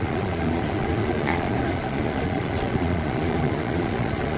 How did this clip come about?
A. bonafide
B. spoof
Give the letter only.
B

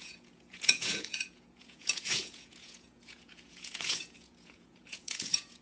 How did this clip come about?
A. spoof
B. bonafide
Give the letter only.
A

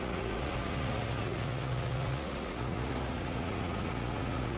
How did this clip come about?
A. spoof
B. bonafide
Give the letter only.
A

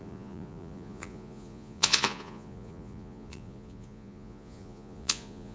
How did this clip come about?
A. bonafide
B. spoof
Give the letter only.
B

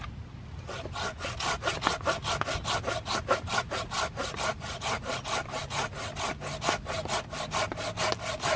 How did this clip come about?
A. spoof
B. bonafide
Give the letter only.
B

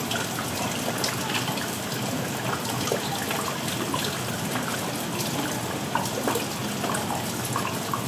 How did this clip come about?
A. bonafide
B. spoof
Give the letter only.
A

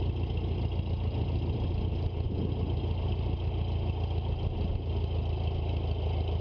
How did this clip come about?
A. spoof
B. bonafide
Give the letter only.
B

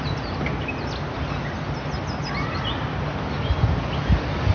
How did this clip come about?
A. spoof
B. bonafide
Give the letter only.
B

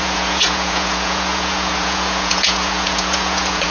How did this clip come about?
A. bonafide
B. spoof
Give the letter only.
B